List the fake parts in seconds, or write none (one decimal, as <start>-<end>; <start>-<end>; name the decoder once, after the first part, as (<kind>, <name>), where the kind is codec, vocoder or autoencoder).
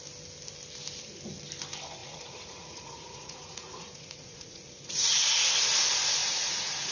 2.0-5.5 (vocoder, Vocos); 6.2-6.9